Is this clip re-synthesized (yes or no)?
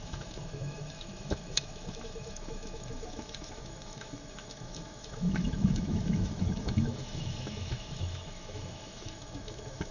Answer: yes